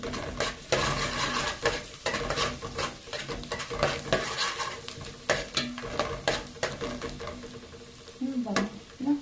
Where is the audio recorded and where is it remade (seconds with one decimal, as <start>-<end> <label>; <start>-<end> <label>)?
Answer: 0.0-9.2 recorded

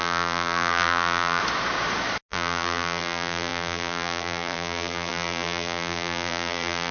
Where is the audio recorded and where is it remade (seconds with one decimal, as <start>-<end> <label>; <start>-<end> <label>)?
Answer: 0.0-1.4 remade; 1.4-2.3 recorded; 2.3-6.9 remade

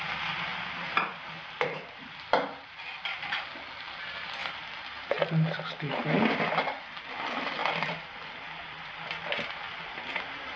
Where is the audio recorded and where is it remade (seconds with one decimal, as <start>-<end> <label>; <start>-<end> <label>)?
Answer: 0.0-10.6 recorded

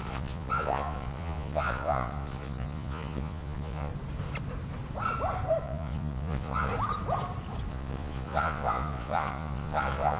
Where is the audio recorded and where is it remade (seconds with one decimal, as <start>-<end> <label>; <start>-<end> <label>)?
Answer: 0.0-3.9 remade; 3.9-5.6 recorded; 5.6-6.7 remade; 6.7-7.7 recorded; 7.7-10.2 remade

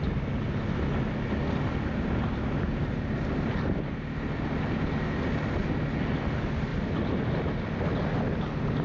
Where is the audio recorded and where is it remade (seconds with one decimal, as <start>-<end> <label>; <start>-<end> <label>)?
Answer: 0.0-8.8 recorded

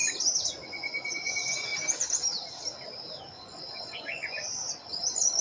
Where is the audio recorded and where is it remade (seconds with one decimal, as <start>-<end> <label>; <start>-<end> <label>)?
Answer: 0.0-0.5 recorded; 0.5-1.7 remade; 1.7-3.2 recorded; 3.2-5.4 remade

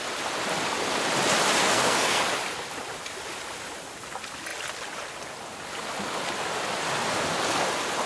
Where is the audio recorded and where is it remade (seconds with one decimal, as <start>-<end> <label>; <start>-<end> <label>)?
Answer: 0.0-1.6 recorded; 1.6-2.2 remade; 2.2-8.1 recorded

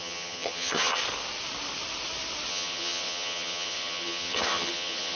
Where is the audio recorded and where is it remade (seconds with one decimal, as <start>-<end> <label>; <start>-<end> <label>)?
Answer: 0.0-1.0 remade; 1.0-2.5 recorded; 2.5-5.2 remade